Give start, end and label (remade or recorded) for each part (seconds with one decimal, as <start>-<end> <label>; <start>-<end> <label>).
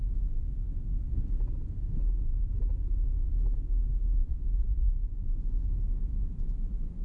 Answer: 0.0-4.2 recorded; 4.2-5.3 remade; 5.3-7.0 recorded